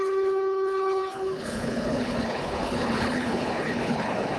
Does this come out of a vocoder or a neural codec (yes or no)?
yes